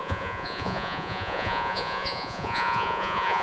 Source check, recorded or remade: remade